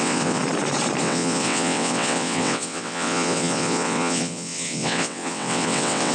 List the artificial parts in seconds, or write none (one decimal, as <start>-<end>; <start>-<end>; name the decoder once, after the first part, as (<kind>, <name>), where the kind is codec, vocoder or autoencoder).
0.0-0.4 (vocoder, WaveNeXt); 1.0-6.1